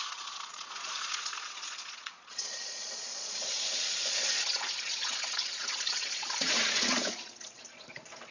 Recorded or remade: remade